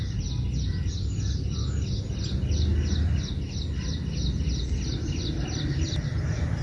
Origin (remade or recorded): recorded